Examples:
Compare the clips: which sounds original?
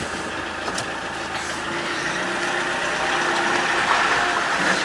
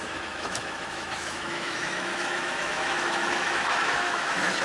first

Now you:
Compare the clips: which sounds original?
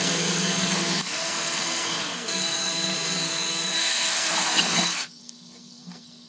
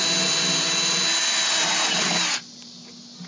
second